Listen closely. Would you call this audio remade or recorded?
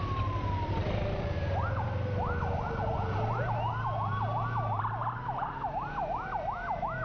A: recorded